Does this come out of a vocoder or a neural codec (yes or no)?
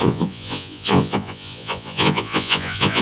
yes